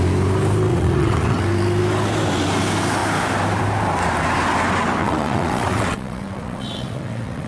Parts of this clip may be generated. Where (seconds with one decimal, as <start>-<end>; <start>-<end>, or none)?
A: 0.7-1.4; 5.0-7.5